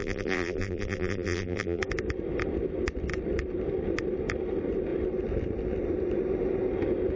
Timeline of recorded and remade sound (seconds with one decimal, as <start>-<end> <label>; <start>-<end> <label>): 0.0-1.8 remade; 1.8-7.2 recorded